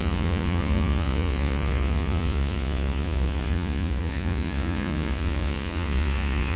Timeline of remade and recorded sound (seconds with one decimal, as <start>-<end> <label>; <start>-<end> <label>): 0.0-6.6 remade